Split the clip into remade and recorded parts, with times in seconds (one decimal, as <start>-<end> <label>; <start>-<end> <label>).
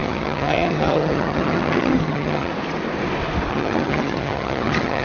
0.0-2.5 remade; 2.5-3.5 recorded; 3.5-5.0 remade